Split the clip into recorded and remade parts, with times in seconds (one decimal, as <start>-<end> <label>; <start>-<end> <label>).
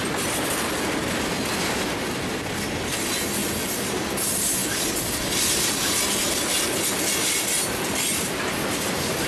0.0-9.3 recorded